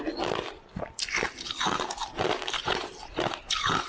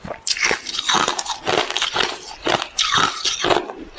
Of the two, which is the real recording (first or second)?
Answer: second